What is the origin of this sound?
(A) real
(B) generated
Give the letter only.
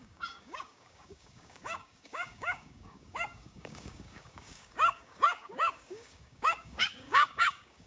B